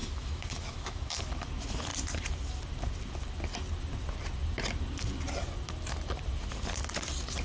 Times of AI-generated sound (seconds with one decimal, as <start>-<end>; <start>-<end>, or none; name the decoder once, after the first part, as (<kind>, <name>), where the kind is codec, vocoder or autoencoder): 0.0-1.3 (autoencoder, DAC-VAE)